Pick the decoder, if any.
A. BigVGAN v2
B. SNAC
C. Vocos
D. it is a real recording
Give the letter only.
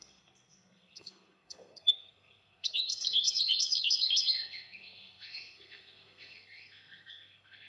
B